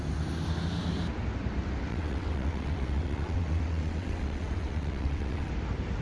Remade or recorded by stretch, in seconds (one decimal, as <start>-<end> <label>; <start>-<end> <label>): 0.0-1.9 recorded; 1.9-5.5 remade; 5.5-6.0 recorded